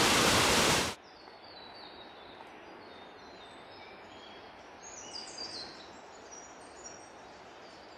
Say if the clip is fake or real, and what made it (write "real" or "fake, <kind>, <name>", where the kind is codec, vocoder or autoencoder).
real